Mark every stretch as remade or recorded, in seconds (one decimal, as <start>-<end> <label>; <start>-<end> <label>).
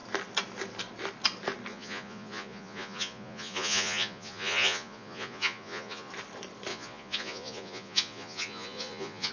0.0-1.7 recorded; 1.7-6.1 remade; 6.1-6.7 recorded; 6.7-9.3 remade